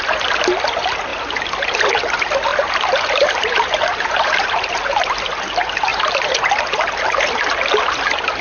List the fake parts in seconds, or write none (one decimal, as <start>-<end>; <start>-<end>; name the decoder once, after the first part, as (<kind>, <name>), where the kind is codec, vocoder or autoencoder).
2.5-5.1 (vocoder, BigVGAN v2); 5.9-6.6